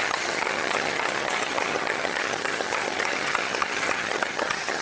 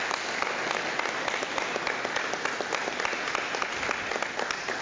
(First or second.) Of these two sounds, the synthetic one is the first